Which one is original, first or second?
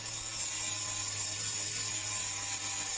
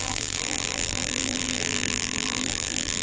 first